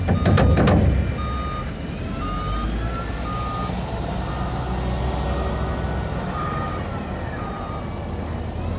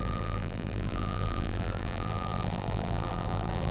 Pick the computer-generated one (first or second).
second